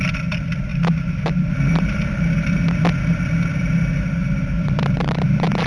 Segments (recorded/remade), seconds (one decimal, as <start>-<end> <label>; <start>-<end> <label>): 0.0-0.7 recorded; 0.7-2.8 remade; 2.8-4.2 recorded; 4.2-5.7 remade